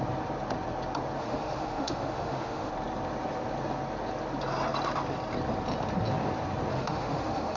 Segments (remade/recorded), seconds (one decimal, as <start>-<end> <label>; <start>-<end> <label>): 0.0-1.2 recorded; 1.2-2.7 remade; 2.7-6.7 recorded; 6.7-7.6 remade